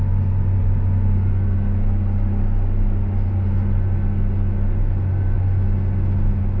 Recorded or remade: recorded